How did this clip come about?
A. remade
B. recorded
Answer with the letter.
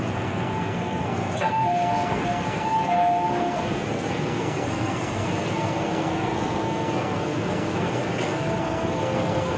A